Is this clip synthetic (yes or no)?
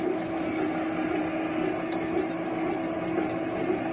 no